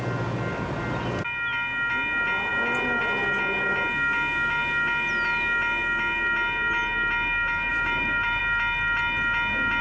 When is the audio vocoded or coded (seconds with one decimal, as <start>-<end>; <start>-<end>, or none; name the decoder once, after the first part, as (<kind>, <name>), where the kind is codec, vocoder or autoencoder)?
7.7-8.4 (vocoder, BigVGAN v2)